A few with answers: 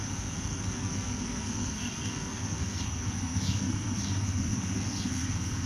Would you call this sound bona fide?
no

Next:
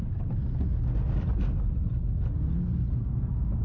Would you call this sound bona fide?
yes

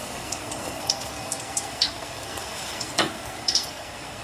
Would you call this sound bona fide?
no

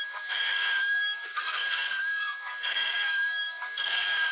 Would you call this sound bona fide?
no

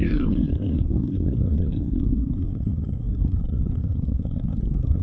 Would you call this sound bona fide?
no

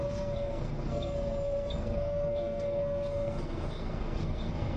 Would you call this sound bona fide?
no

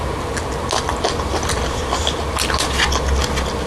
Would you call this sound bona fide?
yes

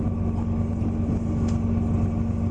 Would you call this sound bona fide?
yes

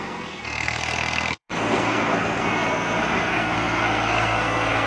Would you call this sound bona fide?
no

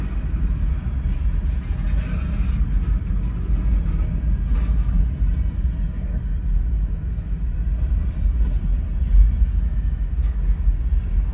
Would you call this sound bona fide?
yes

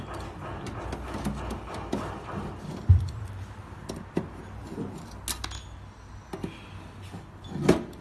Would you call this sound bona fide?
yes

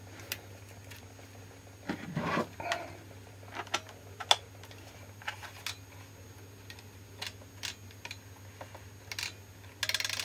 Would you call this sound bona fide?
yes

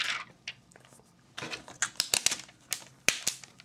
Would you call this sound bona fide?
yes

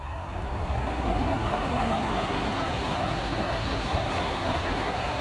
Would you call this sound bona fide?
no